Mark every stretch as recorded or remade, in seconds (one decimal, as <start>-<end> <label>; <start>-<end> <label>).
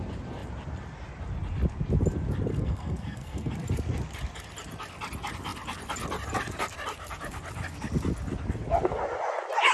0.0-2.5 recorded; 2.5-3.5 remade; 3.5-9.7 recorded